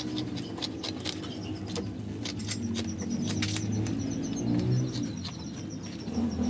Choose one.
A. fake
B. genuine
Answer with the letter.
B